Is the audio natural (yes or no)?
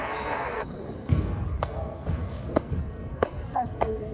no